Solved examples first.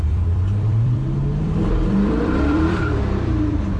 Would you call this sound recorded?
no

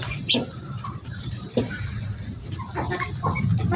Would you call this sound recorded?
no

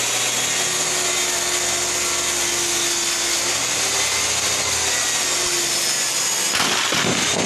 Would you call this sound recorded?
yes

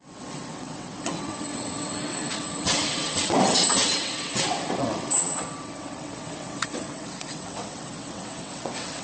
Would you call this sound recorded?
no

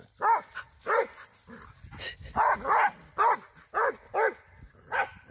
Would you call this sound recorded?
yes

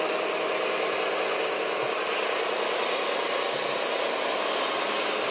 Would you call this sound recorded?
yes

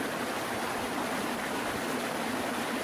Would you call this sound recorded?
yes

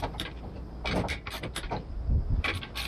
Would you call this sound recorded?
yes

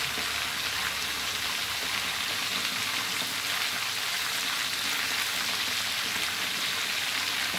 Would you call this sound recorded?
yes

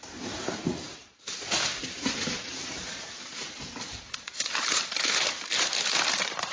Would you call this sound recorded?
no